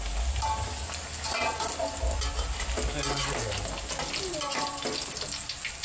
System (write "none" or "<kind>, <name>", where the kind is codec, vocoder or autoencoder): none